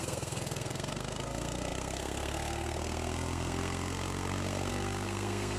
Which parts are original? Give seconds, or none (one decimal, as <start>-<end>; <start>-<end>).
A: none